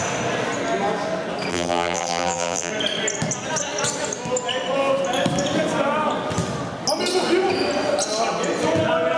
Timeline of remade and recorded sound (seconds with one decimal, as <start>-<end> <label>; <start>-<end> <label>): 0.0-1.5 recorded; 1.5-2.7 remade; 2.7-9.2 recorded